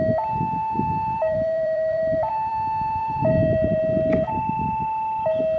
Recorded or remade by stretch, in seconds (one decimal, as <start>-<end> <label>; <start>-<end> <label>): 0.0-0.6 recorded; 0.6-3.8 remade; 3.8-5.6 recorded